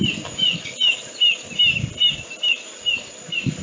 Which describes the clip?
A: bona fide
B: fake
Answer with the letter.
A